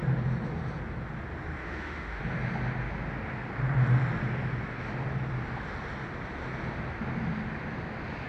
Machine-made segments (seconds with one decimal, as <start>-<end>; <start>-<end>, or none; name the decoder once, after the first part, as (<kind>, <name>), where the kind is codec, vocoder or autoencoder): 1.6-2.2 (autoencoder, DAC-VAE)